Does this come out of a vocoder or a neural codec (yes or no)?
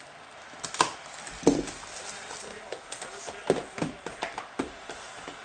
no